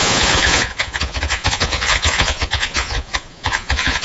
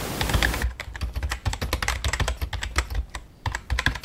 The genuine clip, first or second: second